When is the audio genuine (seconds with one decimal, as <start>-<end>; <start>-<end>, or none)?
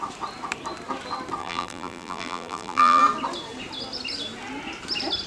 0.0-1.4; 3.0-5.3